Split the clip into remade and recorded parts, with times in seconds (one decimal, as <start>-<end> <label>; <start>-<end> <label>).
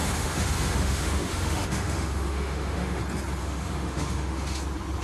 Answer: 0.0-3.0 remade; 3.0-3.4 recorded; 3.4-4.6 remade; 4.6-5.0 recorded